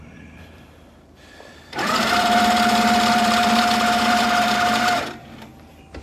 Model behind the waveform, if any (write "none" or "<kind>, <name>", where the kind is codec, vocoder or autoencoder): vocoder, BigVGAN v2